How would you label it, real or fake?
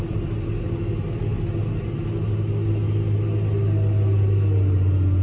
real